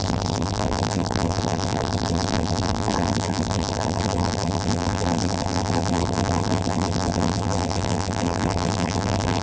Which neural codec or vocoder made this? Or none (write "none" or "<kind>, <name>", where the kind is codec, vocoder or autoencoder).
vocoder, BigVGAN v2